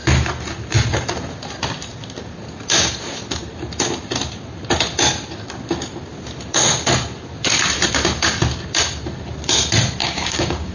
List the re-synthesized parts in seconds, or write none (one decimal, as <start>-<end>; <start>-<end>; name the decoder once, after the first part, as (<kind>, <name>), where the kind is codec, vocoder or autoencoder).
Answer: 10.0-10.7 (codec, DAC)